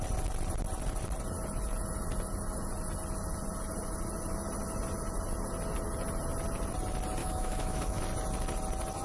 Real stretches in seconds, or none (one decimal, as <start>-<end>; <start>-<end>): 0.0-7.2; 8.0-9.0